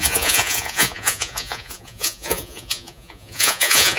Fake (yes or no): yes